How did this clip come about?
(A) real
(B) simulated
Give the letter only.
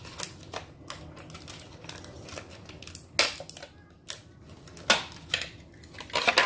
A